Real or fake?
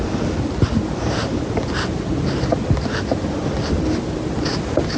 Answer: real